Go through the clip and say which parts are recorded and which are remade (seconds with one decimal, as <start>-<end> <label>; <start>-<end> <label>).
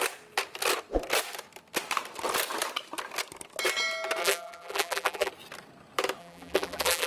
0.0-4.2 recorded; 4.2-5.3 remade; 5.3-6.2 recorded; 6.2-7.1 remade